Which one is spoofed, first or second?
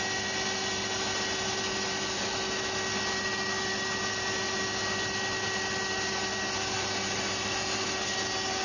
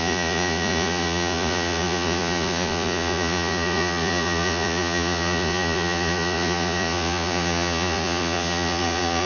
second